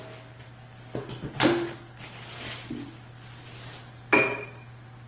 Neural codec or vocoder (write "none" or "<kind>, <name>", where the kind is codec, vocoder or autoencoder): none